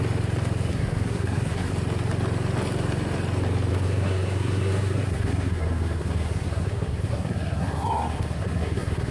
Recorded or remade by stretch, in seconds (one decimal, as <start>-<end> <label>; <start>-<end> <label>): 0.0-0.7 recorded; 0.7-1.7 remade; 1.7-3.7 recorded; 3.7-9.1 remade